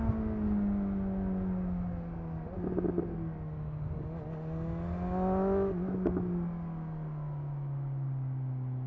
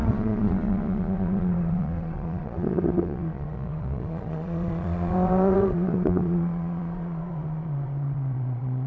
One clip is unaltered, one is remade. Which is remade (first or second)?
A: second